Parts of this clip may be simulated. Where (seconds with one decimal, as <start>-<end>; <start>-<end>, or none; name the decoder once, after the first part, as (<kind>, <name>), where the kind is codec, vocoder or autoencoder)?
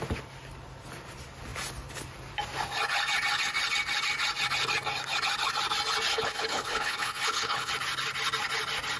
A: 6.1-7.7 (codec, HILCodec)